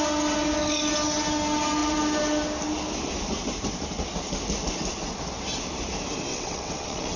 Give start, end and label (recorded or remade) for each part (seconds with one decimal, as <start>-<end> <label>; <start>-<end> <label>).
0.0-6.3 recorded; 6.3-7.2 remade